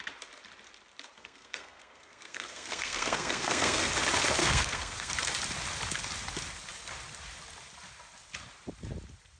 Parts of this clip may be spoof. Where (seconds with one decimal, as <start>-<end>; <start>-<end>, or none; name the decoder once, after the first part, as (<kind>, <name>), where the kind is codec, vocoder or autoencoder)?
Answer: 1.2-3.9 (codec, SNAC); 4.4-5.1